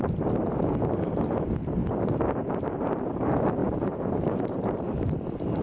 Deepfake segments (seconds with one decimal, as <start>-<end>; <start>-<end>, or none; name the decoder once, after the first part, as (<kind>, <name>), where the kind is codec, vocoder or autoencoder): 1.8-3.1 (vocoder, BigVGAN v2); 3.6-5.6